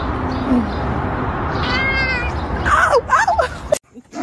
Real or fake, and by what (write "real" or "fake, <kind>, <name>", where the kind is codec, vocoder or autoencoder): real